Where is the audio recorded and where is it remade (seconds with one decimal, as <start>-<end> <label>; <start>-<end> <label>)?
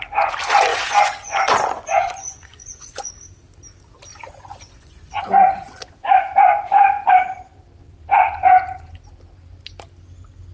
0.0-0.7 recorded; 0.7-3.1 remade; 3.1-4.1 recorded; 4.1-7.1 remade; 7.1-10.5 recorded